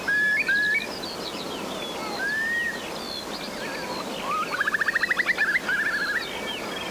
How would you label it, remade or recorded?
recorded